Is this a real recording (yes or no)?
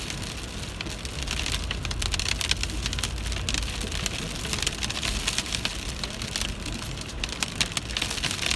yes